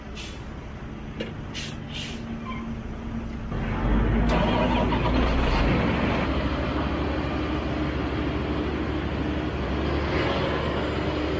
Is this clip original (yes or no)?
yes